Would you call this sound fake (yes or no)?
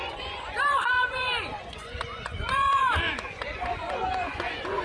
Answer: yes